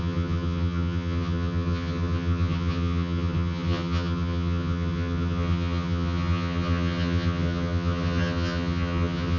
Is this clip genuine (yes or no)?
no